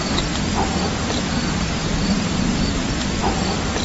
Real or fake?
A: real